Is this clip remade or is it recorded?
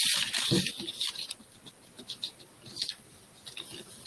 recorded